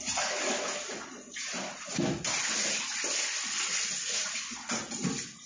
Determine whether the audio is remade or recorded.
recorded